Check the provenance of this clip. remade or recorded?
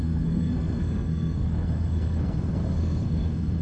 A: remade